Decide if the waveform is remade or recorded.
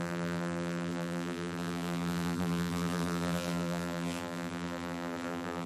remade